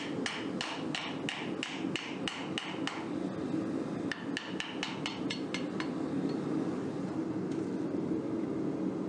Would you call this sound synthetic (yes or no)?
no